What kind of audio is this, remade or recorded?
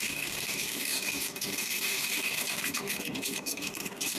remade